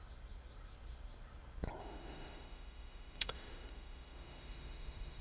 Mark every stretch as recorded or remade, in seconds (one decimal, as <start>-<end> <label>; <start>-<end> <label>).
0.0-1.8 recorded; 1.8-5.2 remade